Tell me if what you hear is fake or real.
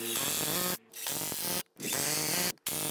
real